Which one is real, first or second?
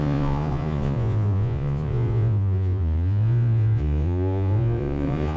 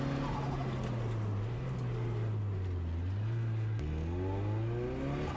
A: second